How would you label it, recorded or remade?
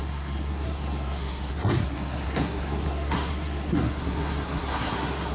remade